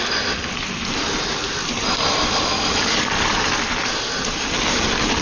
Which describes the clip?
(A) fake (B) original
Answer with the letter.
B